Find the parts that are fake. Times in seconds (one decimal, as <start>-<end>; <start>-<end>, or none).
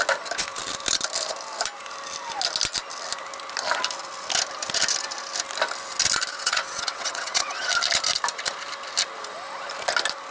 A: 6.3-7.7